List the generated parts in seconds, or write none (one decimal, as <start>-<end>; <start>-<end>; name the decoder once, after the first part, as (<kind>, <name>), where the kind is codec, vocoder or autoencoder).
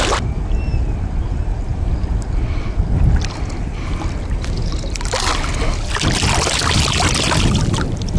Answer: none